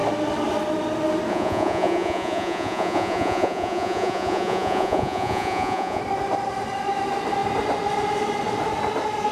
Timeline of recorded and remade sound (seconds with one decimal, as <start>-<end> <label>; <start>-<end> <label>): 0.0-1.3 recorded; 1.3-6.0 remade; 6.0-9.3 recorded